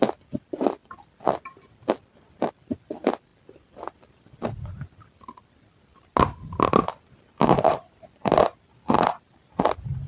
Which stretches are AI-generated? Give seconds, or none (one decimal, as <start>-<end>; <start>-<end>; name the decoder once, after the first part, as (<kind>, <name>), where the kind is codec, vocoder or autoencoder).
0.8-2.5 (vocoder, BigVGAN v2)